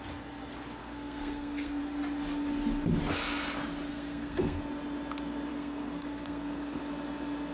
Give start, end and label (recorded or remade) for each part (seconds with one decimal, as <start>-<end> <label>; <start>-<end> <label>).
0.0-0.8 recorded; 0.8-1.8 remade; 1.8-3.9 recorded; 3.9-4.6 remade; 4.6-5.5 recorded; 5.5-6.8 remade; 6.8-7.5 recorded